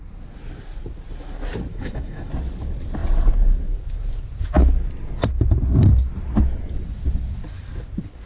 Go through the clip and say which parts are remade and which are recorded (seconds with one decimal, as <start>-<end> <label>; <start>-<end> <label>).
0.0-1.7 recorded; 1.7-2.3 remade; 2.3-8.3 recorded